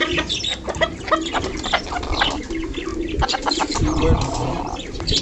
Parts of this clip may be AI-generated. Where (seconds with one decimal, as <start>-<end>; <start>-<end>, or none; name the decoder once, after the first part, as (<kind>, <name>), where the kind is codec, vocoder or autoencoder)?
none